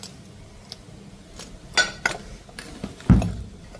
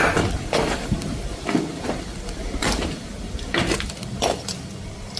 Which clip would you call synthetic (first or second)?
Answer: second